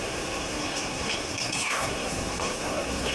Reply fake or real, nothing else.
fake